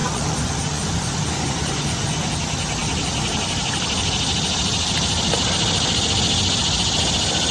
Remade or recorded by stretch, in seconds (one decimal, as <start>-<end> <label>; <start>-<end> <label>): 0.0-2.3 remade; 2.3-7.5 recorded